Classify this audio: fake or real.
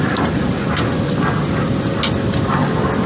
real